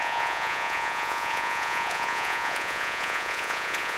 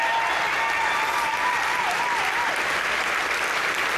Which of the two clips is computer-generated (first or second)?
first